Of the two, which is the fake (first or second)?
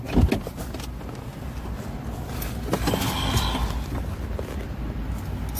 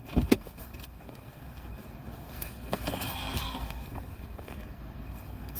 second